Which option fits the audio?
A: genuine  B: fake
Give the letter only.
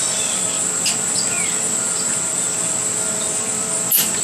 B